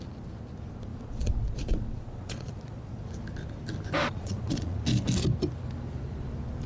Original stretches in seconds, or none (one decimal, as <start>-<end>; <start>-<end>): 0.0-0.9; 3.1-4.0; 4.8-6.7